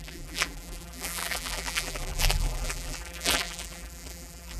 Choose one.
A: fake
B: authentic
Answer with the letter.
A